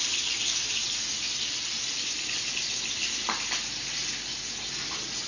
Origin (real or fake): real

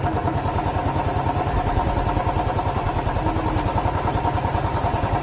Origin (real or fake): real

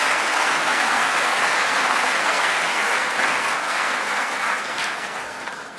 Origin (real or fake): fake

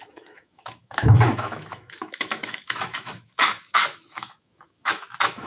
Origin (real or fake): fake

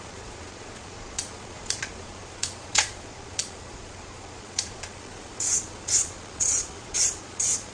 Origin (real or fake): fake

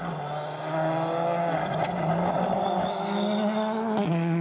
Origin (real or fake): real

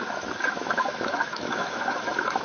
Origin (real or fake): fake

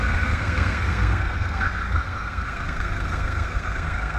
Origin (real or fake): fake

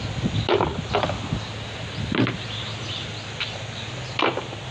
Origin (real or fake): real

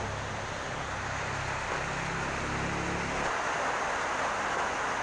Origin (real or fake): real